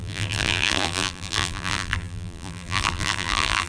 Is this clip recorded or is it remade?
remade